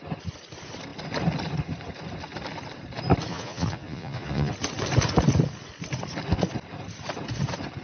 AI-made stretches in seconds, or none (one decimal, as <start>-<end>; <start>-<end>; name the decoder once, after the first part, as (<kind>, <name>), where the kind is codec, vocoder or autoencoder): 3.3-4.5 (vocoder, Vocos)